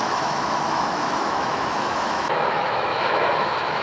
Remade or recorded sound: remade